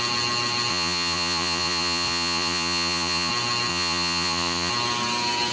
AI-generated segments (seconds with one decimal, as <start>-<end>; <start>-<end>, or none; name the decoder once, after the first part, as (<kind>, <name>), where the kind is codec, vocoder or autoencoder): 0.7-3.3 (vocoder, Vocos); 3.7-4.7